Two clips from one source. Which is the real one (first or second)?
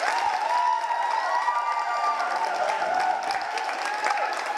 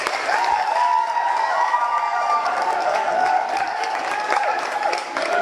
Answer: first